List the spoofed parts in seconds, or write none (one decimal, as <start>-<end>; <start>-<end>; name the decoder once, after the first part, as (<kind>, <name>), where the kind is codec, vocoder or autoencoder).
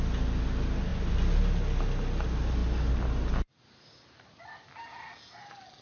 none